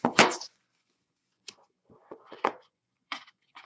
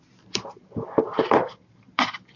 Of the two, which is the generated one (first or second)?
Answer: first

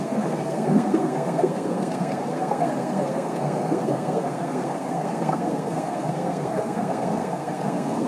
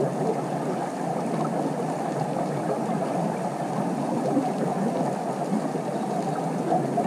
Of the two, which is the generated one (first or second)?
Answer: first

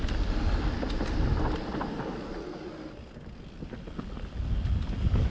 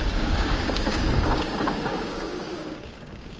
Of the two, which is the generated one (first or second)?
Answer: second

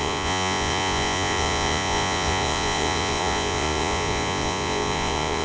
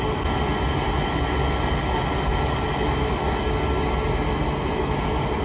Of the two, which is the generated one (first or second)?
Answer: first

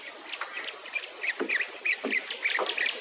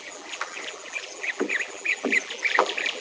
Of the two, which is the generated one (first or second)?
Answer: second